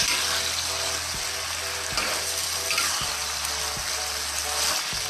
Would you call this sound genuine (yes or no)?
yes